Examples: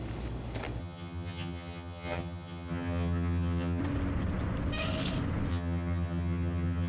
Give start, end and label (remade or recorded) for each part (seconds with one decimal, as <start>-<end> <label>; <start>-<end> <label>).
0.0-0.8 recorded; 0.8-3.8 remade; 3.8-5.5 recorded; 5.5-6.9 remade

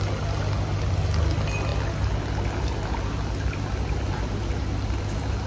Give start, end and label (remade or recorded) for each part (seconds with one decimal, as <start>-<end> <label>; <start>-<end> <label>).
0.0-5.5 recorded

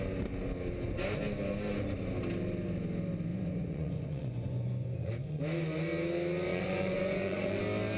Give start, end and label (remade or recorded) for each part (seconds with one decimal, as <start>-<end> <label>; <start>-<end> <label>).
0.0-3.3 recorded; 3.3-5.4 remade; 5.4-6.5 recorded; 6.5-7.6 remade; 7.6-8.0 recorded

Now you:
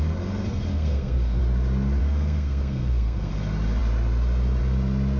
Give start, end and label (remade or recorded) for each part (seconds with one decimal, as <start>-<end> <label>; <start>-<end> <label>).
0.0-0.7 recorded; 0.7-1.4 remade; 1.4-2.0 recorded; 2.0-3.3 remade; 3.3-5.2 recorded

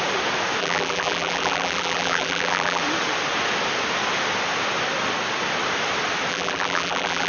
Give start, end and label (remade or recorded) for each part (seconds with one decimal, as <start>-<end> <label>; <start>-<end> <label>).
0.0-0.6 recorded; 0.6-2.8 remade; 2.8-6.3 recorded; 6.3-7.3 remade

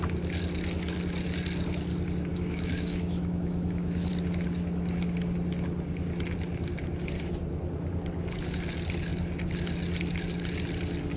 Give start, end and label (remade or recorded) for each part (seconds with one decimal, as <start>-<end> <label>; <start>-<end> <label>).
0.0-2.3 recorded; 2.3-4.1 remade; 4.1-11.2 recorded